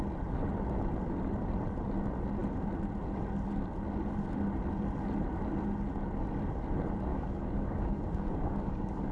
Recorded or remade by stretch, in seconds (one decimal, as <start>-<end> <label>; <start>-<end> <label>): 0.0-7.1 recorded; 7.1-9.1 remade